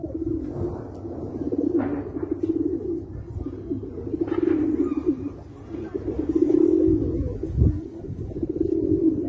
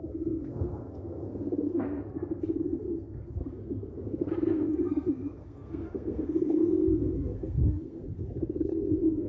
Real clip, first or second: first